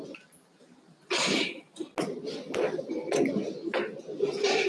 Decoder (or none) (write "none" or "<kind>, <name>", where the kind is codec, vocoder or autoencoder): none